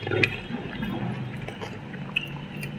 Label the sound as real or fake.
fake